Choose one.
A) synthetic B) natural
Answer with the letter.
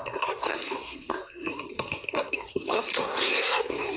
A